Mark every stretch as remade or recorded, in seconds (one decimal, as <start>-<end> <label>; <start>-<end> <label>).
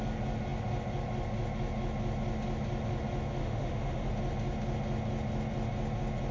0.0-3.4 recorded; 3.4-4.1 remade; 4.1-6.3 recorded